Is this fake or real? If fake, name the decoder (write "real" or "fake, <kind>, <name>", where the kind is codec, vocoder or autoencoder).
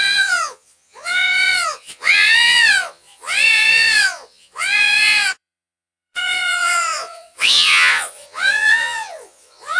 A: fake, vocoder, Vocos